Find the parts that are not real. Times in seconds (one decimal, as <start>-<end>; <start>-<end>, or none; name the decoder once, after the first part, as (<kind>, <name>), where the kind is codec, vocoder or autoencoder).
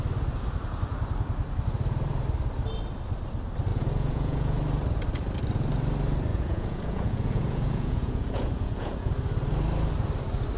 3.7-4.6 (vocoder, Vocos); 6.3-9.1